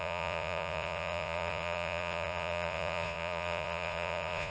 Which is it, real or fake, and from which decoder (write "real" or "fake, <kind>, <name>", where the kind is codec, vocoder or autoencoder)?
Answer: fake, vocoder, Vocos